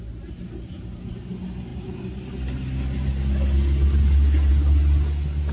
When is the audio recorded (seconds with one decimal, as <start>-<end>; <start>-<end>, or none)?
0.0-5.5